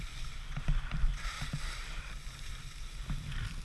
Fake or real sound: fake